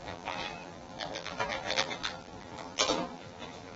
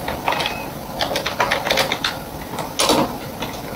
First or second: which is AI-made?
first